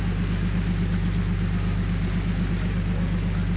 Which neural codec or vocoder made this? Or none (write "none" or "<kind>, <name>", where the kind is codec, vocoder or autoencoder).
none